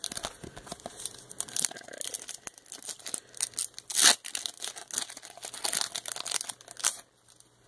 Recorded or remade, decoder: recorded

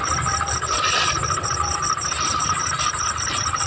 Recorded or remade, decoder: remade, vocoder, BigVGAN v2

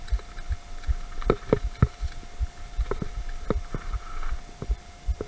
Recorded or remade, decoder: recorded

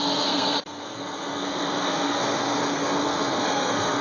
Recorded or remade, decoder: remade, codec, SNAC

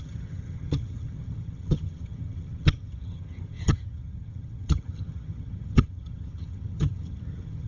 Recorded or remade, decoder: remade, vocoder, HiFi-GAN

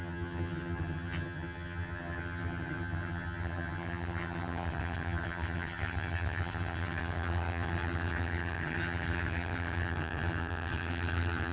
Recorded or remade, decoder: remade, vocoder, HiFi-GAN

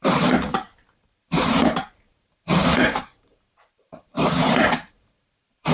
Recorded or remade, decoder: remade, vocoder, BigVGAN v2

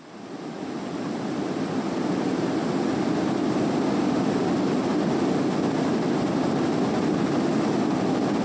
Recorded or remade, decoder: recorded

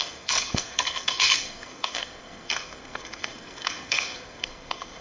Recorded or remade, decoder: remade, codec, SNAC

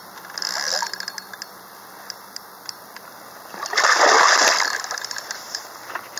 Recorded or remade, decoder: recorded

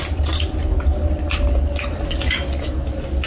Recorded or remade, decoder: recorded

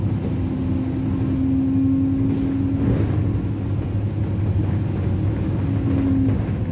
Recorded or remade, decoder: recorded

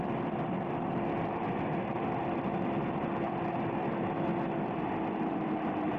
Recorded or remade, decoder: recorded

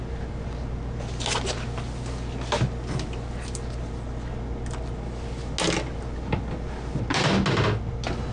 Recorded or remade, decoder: recorded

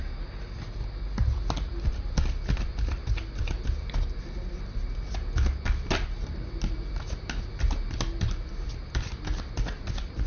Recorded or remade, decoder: recorded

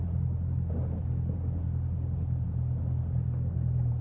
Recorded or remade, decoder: recorded